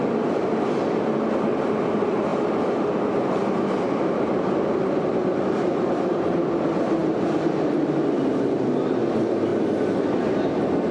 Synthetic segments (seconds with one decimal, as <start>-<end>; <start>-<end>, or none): none